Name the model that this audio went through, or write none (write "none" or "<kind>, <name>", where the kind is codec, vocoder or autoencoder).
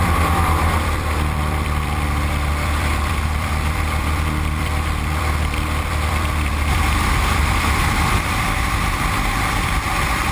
vocoder, BigVGAN v2